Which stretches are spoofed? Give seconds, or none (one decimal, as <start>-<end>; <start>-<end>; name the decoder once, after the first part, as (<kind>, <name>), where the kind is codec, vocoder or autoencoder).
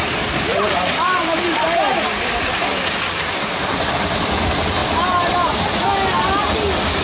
none